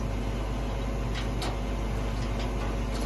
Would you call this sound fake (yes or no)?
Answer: no